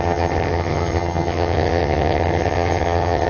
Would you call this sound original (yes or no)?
no